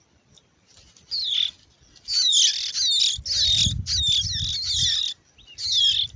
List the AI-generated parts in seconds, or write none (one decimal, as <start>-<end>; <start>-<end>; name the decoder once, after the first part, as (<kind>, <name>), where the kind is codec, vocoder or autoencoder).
none